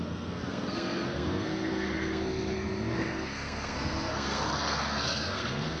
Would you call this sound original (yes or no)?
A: no